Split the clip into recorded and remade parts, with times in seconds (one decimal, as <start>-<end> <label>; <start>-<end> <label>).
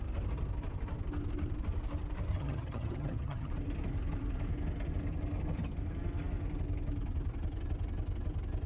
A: 0.0-2.3 recorded; 2.3-3.5 remade; 3.5-8.7 recorded